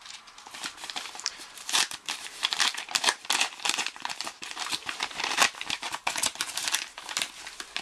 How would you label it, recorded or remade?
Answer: remade